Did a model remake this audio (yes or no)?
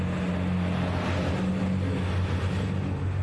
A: no